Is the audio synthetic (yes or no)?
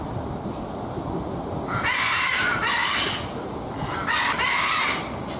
no